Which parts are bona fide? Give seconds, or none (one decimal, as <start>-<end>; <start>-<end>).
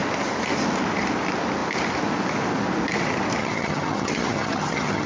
0.0-3.4